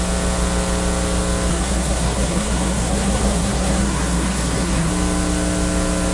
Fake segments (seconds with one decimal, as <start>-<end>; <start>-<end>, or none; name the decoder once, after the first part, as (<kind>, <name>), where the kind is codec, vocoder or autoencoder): 1.5-4.9 (codec, SNAC)